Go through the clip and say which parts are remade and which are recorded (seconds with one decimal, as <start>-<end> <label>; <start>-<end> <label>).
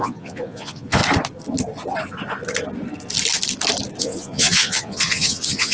0.0-1.0 remade; 1.0-4.0 recorded; 4.0-5.7 remade